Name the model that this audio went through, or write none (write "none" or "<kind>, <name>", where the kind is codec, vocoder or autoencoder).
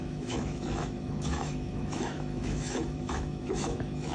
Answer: autoencoder, DAC-VAE